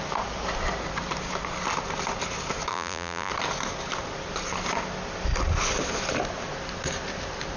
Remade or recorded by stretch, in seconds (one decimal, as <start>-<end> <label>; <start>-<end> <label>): 0.0-2.7 recorded; 2.7-3.3 remade; 3.3-7.6 recorded